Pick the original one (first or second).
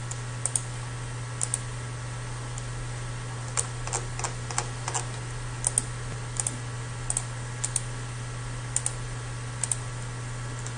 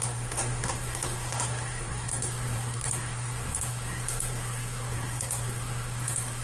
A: first